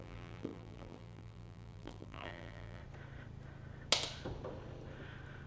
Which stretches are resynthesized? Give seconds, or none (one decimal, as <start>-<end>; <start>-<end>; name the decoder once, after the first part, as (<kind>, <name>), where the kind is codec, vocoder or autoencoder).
0.0-2.8 (vocoder, BigVGAN v2)